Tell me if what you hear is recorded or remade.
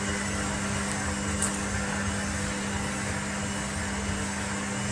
recorded